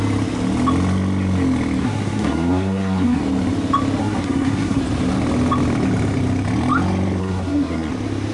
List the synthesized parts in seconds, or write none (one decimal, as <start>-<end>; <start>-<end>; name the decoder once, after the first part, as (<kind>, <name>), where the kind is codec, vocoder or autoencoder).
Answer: 1.8-3.2 (codec, SNAC); 4.0-4.8; 7.2-7.9